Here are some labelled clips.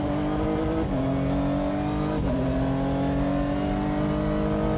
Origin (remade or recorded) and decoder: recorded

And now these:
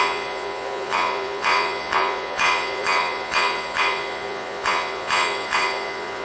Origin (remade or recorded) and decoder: remade, vocoder, Vocos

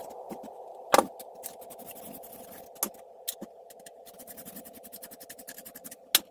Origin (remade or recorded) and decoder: recorded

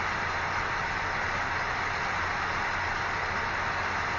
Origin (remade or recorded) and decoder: recorded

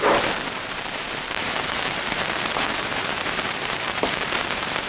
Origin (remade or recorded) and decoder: remade, vocoder, BigVGAN v2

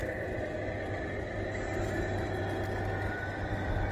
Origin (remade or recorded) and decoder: recorded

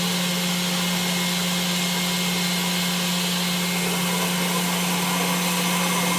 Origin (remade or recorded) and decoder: recorded